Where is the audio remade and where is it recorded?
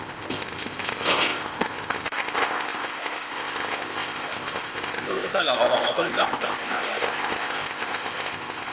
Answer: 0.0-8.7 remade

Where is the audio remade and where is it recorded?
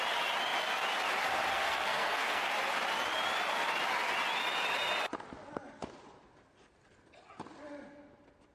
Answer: 0.0-1.5 recorded; 1.5-2.5 remade; 2.5-8.5 recorded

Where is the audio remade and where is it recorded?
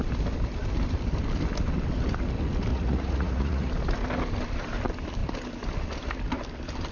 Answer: 0.0-2.7 recorded; 2.7-3.7 remade; 3.7-6.9 recorded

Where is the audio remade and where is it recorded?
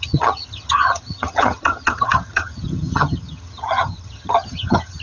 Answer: 0.0-5.0 remade